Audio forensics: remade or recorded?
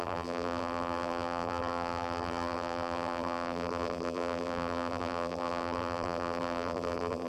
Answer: remade